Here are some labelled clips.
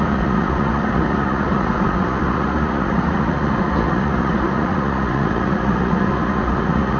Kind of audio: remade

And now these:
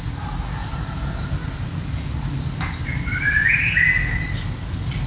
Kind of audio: recorded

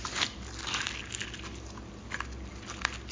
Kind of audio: recorded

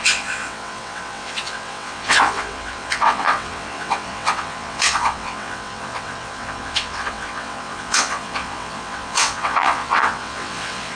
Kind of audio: remade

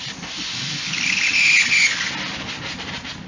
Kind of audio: recorded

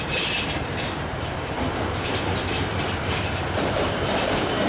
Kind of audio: remade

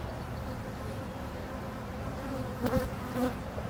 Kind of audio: remade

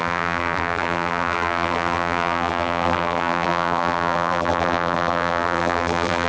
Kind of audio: remade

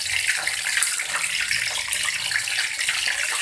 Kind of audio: recorded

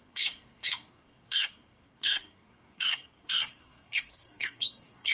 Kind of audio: remade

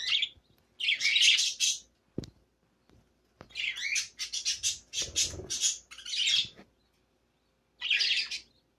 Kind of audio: recorded